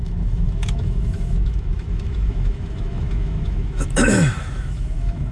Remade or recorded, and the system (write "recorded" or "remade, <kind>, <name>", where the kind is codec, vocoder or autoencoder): remade, autoencoder, DAC-VAE